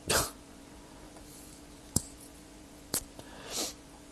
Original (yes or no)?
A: no